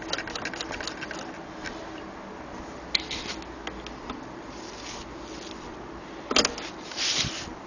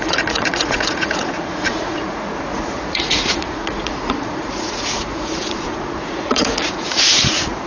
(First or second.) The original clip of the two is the first